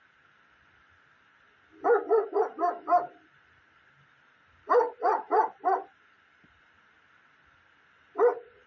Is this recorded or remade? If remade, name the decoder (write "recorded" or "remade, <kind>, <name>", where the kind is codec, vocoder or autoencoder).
recorded